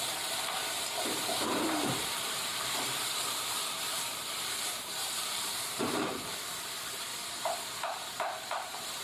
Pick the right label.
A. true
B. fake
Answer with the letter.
B